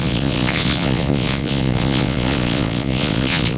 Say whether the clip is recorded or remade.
remade